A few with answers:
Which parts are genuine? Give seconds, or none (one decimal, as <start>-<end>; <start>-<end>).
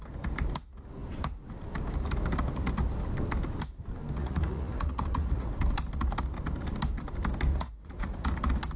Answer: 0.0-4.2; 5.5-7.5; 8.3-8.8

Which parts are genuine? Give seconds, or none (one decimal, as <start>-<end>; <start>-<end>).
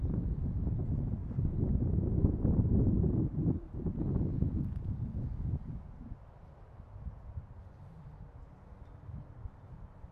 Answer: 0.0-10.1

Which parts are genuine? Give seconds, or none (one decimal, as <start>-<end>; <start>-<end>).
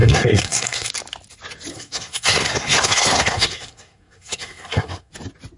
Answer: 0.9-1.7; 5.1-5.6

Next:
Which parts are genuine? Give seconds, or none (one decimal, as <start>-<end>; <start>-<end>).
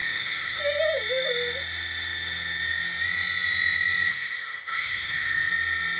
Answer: 0.6-4.1; 5.5-6.0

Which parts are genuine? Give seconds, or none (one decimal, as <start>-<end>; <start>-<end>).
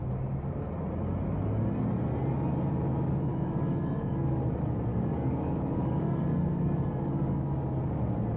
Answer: 0.0-3.3; 4.3-4.9; 7.5-8.4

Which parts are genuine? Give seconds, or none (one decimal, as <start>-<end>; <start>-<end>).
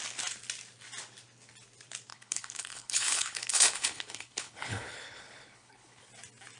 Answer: 0.0-2.1; 6.1-6.6